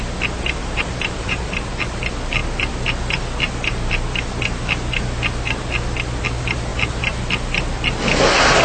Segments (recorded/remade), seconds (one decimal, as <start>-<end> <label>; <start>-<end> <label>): 0.0-0.6 recorded; 0.6-1.7 remade; 1.7-8.6 recorded